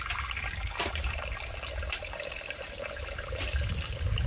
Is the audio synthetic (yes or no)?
no